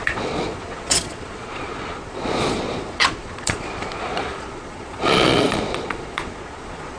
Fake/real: fake